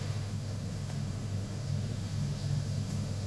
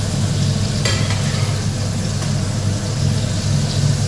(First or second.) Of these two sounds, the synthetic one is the first